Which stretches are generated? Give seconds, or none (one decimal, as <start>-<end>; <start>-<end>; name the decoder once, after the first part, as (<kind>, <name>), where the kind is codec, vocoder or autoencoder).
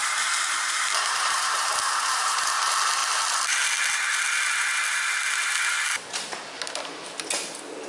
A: 0.0-2.6 (vocoder, BigVGAN v2)